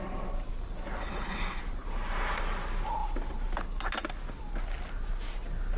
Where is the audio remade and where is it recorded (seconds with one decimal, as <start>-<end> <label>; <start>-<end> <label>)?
0.0-1.0 recorded; 1.0-1.6 remade; 1.6-5.8 recorded